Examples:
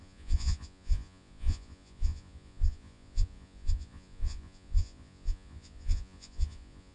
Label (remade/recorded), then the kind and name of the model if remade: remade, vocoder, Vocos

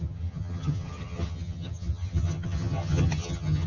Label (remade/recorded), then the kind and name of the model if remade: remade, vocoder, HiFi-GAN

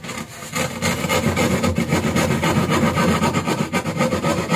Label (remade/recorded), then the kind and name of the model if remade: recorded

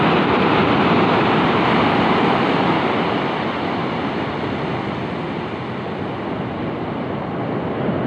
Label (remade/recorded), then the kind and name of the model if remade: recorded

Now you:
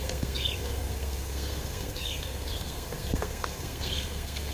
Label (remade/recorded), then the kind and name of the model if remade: remade, codec, SNAC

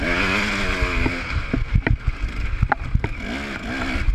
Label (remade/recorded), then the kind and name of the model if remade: recorded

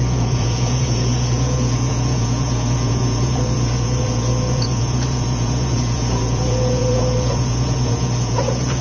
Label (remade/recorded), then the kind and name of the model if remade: remade, vocoder, Vocos